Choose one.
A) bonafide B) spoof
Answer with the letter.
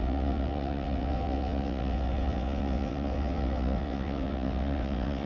B